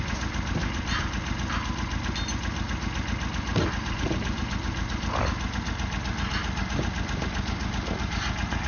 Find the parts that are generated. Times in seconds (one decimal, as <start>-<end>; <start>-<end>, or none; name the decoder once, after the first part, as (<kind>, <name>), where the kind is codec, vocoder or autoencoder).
none